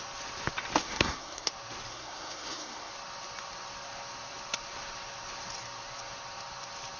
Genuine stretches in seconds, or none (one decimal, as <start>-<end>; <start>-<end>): 0.0-0.8; 1.5-1.9; 2.9-7.0